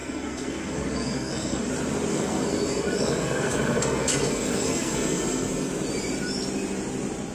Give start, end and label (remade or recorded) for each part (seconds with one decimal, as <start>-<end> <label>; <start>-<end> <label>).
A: 0.0-1.7 remade; 1.7-2.1 recorded; 2.1-5.7 remade; 5.7-7.3 recorded

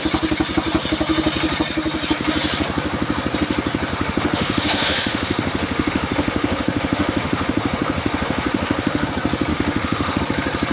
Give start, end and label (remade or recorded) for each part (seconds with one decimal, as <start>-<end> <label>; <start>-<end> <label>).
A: 0.0-3.9 recorded; 3.9-9.1 remade; 9.1-9.5 recorded; 9.5-10.2 remade; 10.2-10.7 recorded

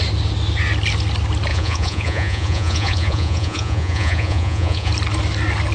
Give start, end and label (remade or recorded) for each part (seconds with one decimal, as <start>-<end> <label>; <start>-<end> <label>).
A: 0.0-1.5 recorded; 1.5-4.9 remade; 4.9-5.7 recorded

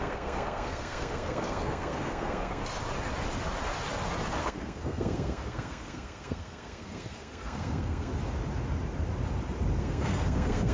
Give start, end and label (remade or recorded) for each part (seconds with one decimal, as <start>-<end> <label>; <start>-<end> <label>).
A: 0.0-2.6 remade; 2.6-4.4 recorded; 4.4-8.1 remade; 8.1-9.8 recorded; 9.8-10.7 remade

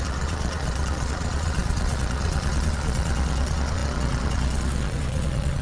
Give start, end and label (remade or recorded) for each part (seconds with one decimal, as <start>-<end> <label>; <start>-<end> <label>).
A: 0.0-5.6 remade

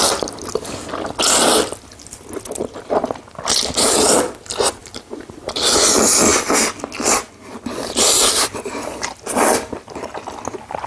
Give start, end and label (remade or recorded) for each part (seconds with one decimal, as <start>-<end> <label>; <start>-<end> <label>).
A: 0.0-4.8 recorded; 4.8-5.6 remade; 5.6-7.8 recorded; 7.8-8.9 remade; 8.9-10.9 recorded

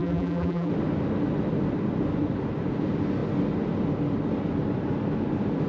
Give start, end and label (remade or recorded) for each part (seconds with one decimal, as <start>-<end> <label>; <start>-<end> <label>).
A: 0.0-0.7 remade; 0.7-5.7 recorded

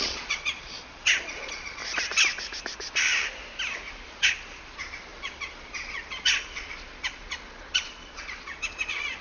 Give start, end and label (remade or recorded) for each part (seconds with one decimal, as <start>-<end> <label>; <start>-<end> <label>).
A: 0.0-1.8 remade; 1.8-3.9 recorded; 3.9-9.2 remade